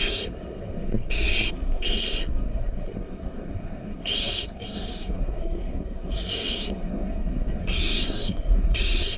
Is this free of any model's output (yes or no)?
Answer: no